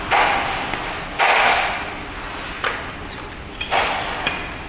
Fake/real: real